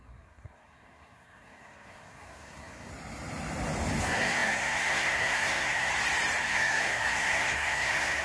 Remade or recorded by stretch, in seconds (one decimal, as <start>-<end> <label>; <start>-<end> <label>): 0.0-2.9 remade; 2.9-4.0 recorded; 4.0-5.9 remade; 5.9-6.4 recorded; 6.4-8.2 remade